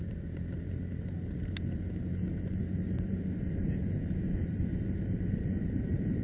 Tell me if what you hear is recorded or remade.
remade